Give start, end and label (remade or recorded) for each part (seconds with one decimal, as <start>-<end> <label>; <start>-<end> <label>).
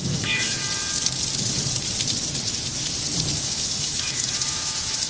0.0-0.6 remade; 0.6-3.4 recorded; 3.4-5.1 remade